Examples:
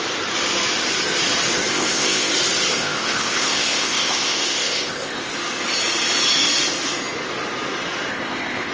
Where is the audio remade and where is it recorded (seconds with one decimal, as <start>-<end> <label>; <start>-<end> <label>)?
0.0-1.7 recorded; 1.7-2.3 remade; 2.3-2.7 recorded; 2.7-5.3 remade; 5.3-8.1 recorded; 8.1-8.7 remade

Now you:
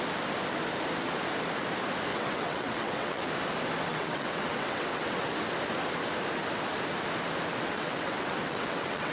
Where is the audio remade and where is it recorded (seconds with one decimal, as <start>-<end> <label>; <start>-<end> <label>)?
0.0-2.1 recorded; 2.1-3.3 remade; 3.3-3.9 recorded; 3.9-5.2 remade; 5.2-7.5 recorded; 7.5-9.1 remade

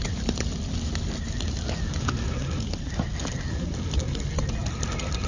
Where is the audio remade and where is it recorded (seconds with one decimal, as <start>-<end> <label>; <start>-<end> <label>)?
0.0-5.3 recorded

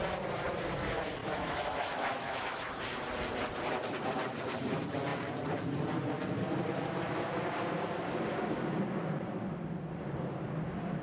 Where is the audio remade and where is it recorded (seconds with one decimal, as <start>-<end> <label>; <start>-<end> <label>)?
0.0-1.2 recorded; 1.2-2.8 remade; 2.8-11.0 recorded

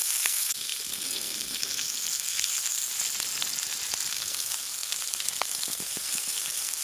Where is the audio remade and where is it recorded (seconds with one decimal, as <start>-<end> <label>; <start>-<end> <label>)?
0.0-2.9 remade; 2.9-4.1 recorded; 4.1-6.8 remade